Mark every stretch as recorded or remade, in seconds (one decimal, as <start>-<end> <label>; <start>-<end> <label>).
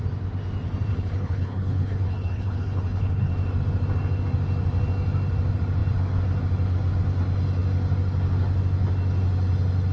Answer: 0.0-0.9 recorded; 0.9-3.3 remade; 3.3-9.9 recorded